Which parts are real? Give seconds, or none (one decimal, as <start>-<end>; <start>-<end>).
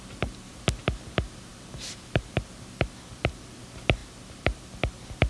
0.0-1.5; 3.6-4.0